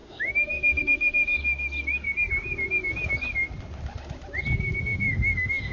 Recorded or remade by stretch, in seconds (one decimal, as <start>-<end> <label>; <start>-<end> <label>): 0.0-1.4 remade; 1.4-4.8 recorded; 4.8-5.7 remade